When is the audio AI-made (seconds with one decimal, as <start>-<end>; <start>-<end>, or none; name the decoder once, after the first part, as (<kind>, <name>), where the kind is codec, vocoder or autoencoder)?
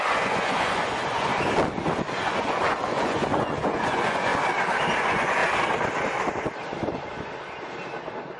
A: 0.0-1.3 (vocoder, Vocos); 2.1-4.3; 5.0-5.4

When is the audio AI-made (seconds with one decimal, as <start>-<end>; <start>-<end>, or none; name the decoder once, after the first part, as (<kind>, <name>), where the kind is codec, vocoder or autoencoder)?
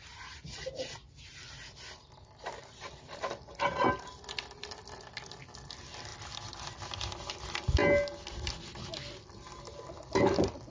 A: none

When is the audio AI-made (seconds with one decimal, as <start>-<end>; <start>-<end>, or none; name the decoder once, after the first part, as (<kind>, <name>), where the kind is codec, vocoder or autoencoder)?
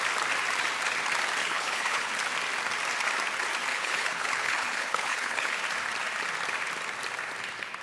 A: 1.4-2.1 (codec, HILCodec); 3.7-5.6